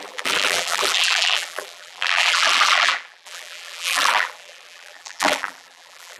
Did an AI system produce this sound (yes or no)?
yes